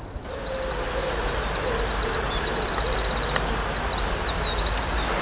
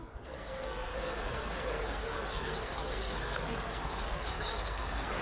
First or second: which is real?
first